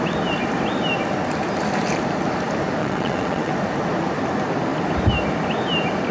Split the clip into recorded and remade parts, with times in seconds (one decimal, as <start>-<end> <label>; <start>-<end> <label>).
0.0-2.8 recorded; 2.8-3.5 remade; 3.5-6.1 recorded